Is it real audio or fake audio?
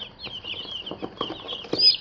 real